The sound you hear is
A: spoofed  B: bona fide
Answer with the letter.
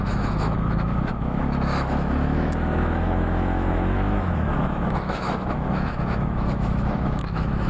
A